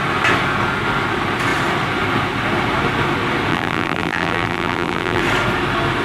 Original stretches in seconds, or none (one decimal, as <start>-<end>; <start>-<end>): 0.0-3.5; 5.2-6.0